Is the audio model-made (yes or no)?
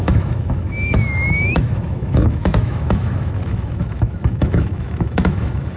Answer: yes